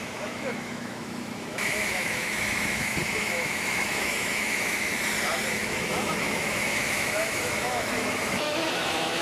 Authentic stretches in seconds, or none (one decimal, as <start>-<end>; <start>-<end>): 4.9-5.5